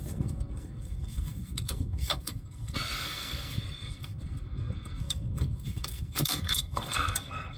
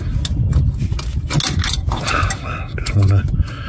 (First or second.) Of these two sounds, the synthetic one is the first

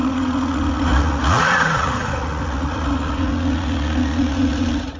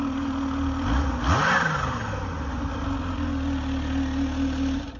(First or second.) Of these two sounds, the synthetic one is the first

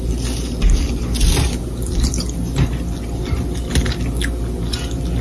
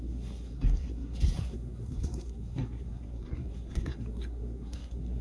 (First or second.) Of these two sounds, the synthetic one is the second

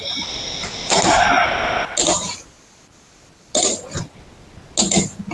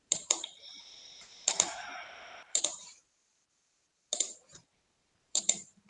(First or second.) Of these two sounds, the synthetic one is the second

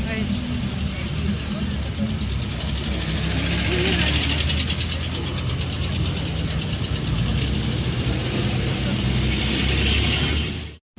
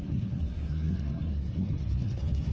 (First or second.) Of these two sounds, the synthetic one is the second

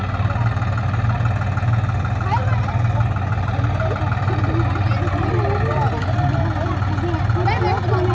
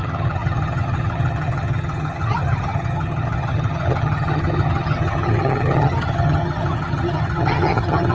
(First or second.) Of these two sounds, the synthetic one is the second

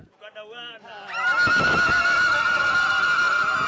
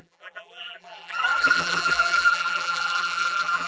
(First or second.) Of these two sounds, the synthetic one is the second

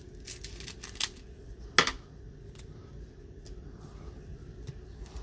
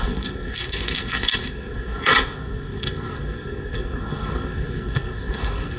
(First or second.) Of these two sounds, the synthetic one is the second